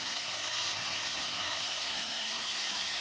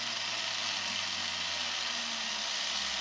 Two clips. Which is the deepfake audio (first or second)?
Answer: first